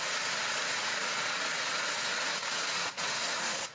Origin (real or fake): fake